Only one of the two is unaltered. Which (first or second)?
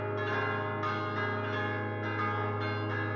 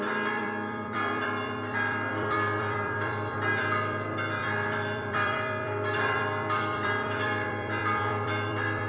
first